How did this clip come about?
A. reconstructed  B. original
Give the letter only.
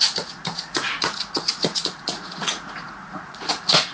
A